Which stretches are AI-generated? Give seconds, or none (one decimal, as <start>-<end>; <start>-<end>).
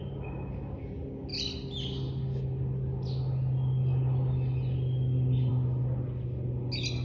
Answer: none